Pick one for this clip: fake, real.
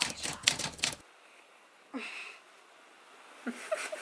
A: real